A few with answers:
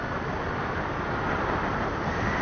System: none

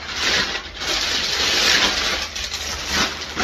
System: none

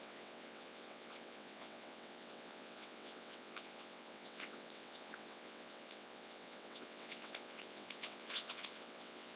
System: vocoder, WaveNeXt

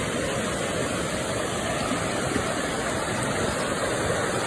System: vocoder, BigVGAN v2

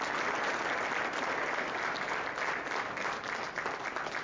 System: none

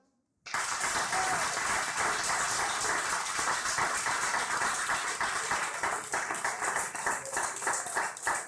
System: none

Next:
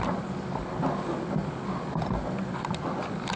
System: none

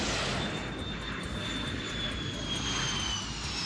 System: none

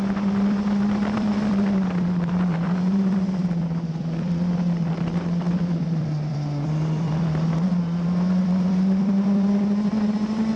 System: vocoder, BigVGAN v2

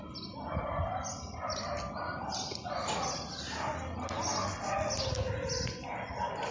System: none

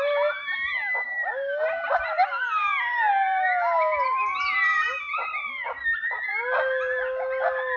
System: none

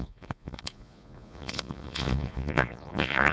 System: vocoder, Vocos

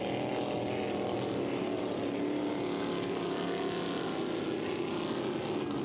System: none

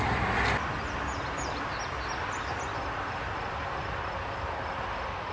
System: none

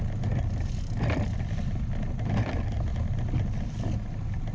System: none